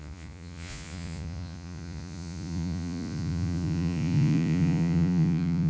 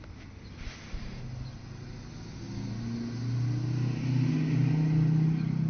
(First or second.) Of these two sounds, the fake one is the first